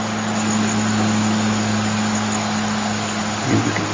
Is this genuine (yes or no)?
yes